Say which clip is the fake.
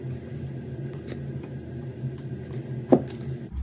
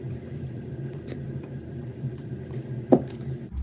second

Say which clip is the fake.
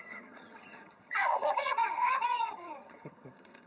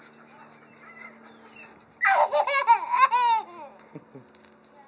first